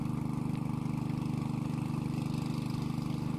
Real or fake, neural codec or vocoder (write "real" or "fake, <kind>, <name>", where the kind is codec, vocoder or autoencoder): real